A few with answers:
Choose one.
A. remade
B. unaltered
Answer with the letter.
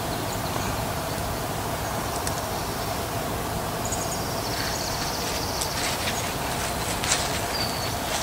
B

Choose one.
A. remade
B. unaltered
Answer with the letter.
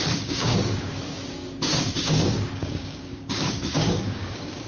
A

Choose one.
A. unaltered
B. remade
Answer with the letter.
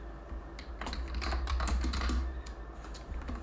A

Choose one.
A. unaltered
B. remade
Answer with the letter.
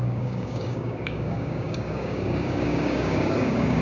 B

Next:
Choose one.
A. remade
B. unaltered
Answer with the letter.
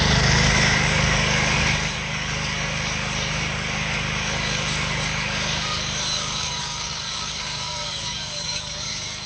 A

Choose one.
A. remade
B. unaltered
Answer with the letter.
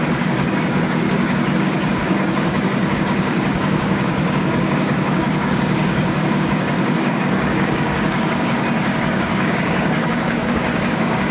A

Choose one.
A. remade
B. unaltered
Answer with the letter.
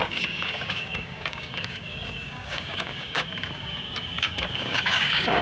A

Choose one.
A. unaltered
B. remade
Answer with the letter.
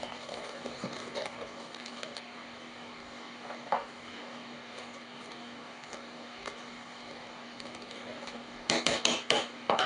B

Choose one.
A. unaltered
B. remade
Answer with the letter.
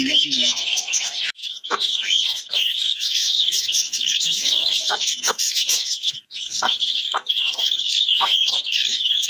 B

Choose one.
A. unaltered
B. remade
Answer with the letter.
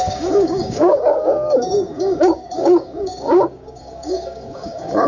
B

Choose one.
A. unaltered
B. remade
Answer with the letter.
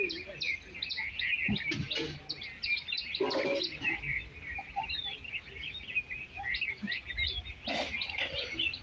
A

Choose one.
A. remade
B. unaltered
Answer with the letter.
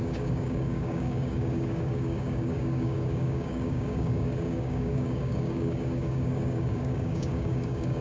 A